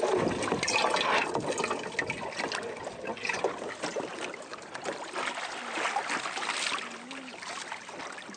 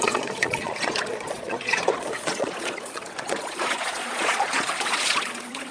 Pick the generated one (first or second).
second